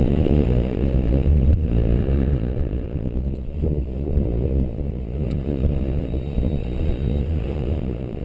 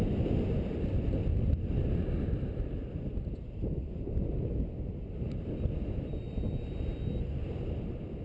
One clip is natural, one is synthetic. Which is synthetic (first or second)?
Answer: first